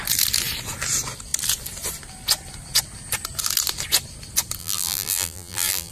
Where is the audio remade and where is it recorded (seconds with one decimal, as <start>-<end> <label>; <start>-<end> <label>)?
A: 0.0-4.6 recorded; 4.6-5.9 remade